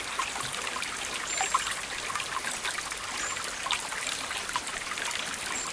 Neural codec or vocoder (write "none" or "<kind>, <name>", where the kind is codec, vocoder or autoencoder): none